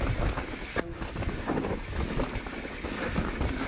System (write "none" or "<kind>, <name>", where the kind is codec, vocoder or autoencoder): none